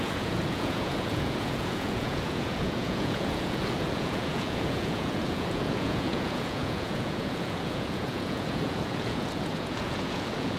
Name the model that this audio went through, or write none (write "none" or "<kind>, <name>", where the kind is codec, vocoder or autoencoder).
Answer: vocoder, Vocos